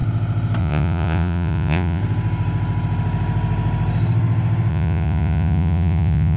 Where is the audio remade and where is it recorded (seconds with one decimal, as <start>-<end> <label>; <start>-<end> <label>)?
0.0-0.6 recorded; 0.6-2.0 remade; 2.0-4.7 recorded; 4.7-6.4 remade